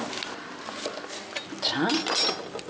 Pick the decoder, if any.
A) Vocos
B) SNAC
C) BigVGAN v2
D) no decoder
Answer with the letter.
D